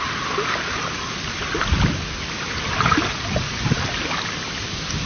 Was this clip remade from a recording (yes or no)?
no